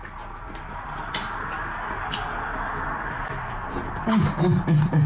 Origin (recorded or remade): recorded